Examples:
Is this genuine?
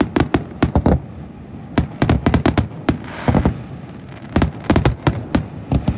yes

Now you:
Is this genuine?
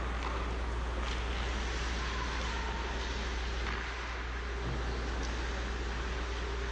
yes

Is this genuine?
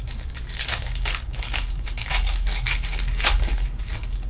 no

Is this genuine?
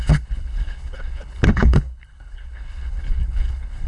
no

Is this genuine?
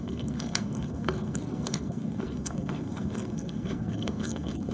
no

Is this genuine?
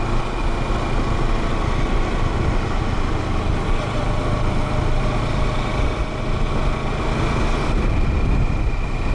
yes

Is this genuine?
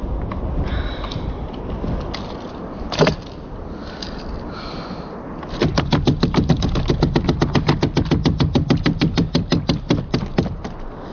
yes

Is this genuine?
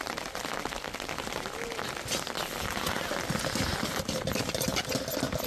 yes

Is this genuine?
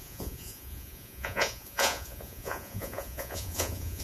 no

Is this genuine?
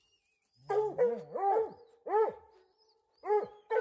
yes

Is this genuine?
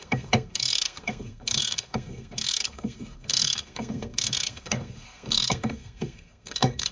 no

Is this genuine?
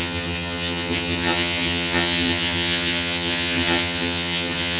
no